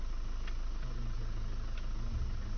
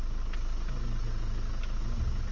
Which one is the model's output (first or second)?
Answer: second